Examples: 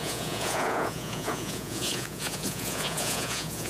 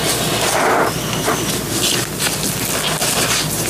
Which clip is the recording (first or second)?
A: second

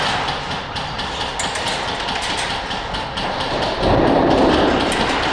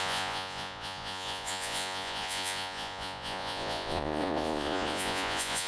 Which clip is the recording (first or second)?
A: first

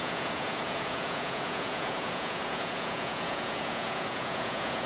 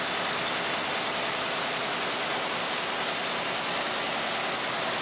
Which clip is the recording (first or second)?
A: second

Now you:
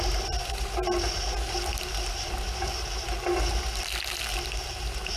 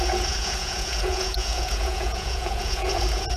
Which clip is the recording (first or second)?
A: first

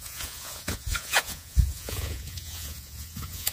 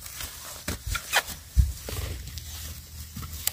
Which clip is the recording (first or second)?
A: second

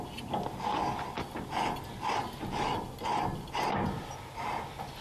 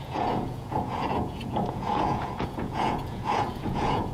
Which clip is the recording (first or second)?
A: first